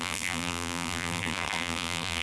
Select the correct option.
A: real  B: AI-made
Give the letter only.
B